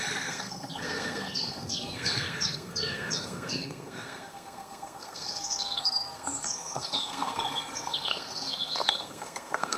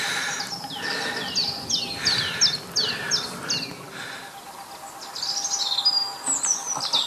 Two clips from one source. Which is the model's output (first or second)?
first